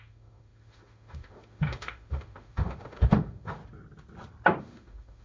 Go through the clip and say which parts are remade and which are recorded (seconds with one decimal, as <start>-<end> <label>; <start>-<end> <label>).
0.0-3.6 remade; 3.6-4.6 recorded; 4.6-5.2 remade

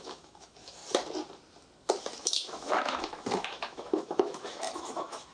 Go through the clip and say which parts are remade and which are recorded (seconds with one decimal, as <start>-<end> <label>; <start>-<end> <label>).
0.0-0.8 remade; 0.8-2.2 recorded; 2.2-5.3 remade